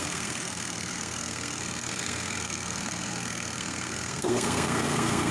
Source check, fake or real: fake